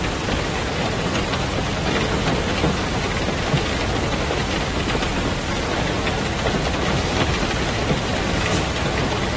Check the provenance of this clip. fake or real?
real